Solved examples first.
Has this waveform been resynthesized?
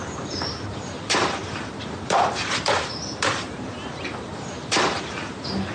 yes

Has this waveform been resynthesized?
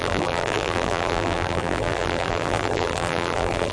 yes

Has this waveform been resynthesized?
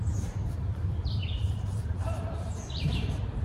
yes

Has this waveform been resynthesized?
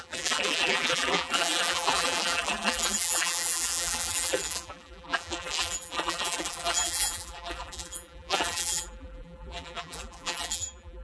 yes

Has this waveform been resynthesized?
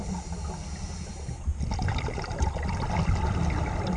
no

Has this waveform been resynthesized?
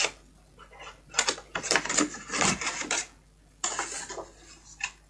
yes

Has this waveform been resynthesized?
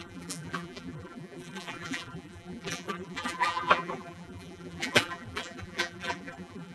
yes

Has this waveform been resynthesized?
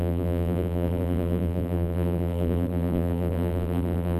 yes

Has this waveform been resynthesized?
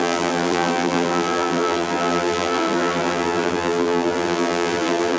yes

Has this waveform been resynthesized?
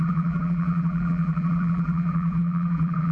yes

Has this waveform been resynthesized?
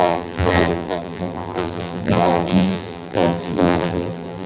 yes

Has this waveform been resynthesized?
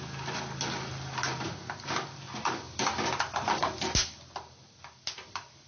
no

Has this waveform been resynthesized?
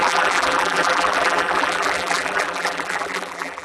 yes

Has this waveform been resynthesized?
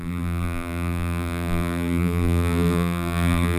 yes